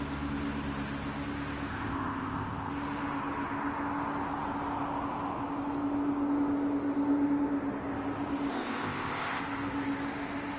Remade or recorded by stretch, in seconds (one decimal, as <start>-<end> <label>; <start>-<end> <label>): 0.0-1.7 recorded; 1.7-2.7 remade; 2.7-8.5 recorded; 8.5-9.4 remade; 9.4-10.6 recorded